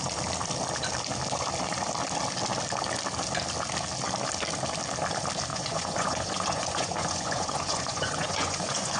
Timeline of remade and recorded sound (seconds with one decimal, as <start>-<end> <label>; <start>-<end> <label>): 0.0-5.5 recorded; 5.5-9.0 remade